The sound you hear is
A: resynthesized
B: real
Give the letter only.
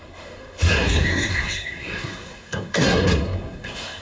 A